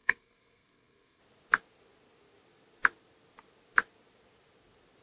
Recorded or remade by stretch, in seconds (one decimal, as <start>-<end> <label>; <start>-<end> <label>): 0.0-1.2 remade; 1.2-5.0 recorded